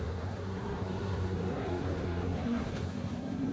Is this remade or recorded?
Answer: remade